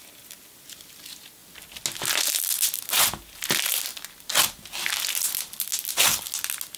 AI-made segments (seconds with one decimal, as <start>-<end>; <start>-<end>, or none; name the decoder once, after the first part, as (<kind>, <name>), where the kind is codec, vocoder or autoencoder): none